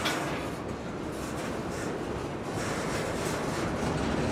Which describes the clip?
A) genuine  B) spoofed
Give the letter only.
A